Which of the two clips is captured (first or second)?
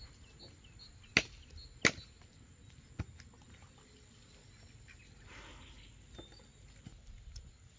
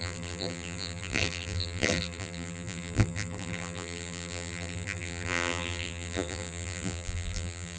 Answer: first